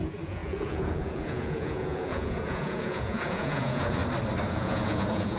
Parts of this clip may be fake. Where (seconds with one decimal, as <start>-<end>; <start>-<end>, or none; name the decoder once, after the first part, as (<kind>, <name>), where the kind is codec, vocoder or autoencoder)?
0.0-4.0 (vocoder, Vocos); 4.5-5.4